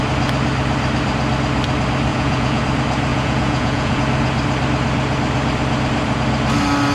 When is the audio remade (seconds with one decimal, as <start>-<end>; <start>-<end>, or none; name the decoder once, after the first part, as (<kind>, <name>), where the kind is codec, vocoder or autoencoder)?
2.1-2.6 (vocoder, Vocos); 3.1-4.0